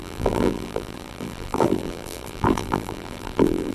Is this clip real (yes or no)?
no